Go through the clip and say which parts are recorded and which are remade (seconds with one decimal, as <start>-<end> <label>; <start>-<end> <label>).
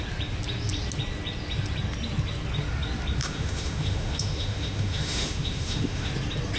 0.0-3.2 recorded; 3.2-6.1 remade; 6.1-6.6 recorded